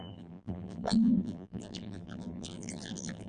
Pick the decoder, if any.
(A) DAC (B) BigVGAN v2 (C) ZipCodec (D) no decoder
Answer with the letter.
B